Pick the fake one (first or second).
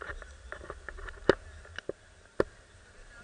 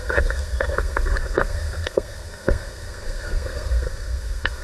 second